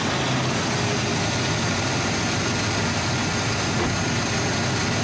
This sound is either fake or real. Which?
real